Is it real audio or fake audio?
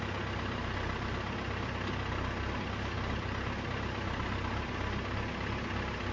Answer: real